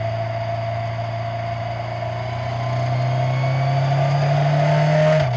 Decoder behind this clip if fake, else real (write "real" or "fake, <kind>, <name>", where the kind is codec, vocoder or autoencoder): real